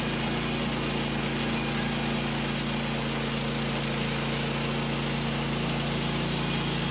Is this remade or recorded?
recorded